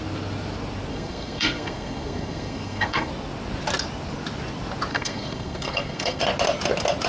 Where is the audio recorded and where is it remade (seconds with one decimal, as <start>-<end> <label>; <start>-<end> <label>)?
0.0-0.9 recorded; 0.9-3.1 remade; 3.1-4.9 recorded; 4.9-6.2 remade; 6.2-7.1 recorded